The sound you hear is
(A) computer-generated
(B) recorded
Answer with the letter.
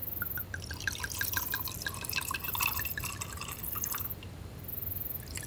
A